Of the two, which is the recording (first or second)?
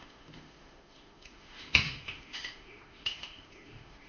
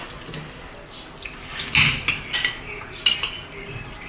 second